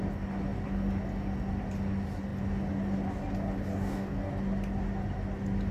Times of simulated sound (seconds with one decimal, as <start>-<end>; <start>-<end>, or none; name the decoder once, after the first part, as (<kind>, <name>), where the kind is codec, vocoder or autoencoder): 3.7-4.3 (codec, DAC)